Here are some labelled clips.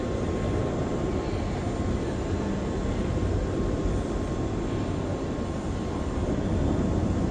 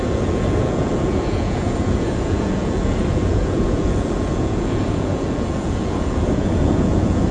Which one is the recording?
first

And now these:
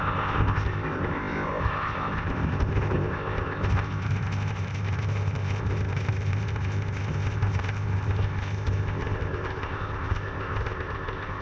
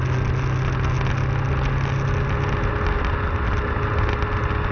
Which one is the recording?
second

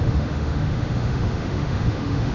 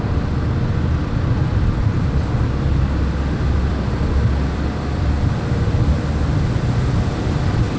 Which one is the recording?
second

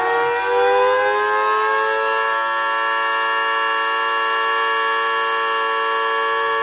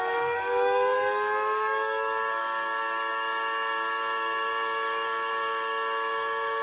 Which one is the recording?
first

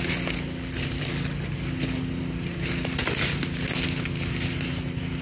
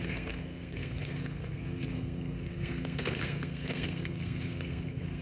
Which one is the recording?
first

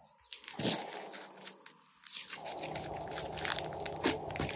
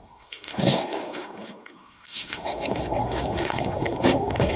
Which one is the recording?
first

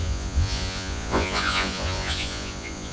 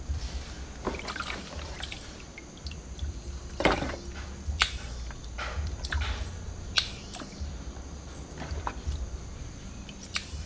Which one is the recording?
second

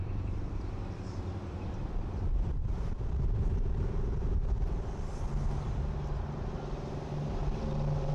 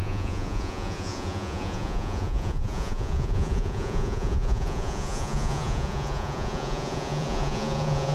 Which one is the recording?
first